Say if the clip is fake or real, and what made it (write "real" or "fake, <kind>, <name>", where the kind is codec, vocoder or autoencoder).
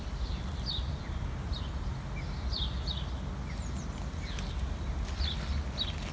real